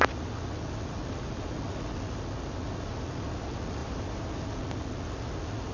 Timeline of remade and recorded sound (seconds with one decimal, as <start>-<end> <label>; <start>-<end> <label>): 0.0-3.8 recorded; 3.8-4.3 remade; 4.3-5.7 recorded